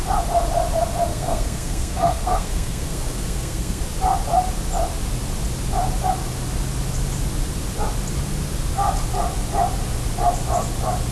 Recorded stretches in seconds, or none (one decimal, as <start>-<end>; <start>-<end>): 0.0-1.1; 3.8-11.1